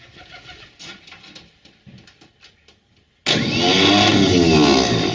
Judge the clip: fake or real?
real